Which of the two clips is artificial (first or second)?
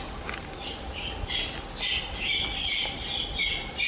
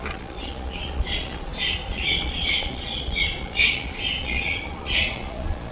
second